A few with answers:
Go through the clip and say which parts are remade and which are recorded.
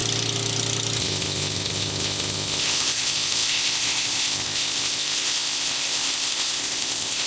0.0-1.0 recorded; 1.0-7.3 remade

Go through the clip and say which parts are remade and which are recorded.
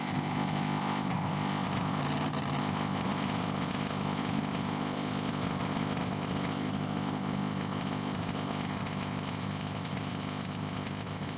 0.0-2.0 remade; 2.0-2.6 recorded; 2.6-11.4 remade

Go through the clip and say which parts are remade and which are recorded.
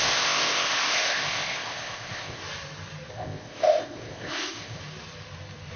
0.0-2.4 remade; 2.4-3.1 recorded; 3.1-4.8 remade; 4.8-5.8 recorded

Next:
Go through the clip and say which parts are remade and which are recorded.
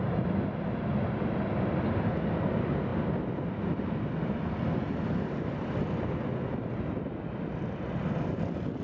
0.0-8.8 recorded